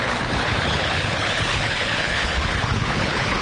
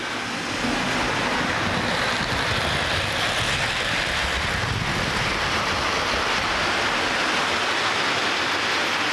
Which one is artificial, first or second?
first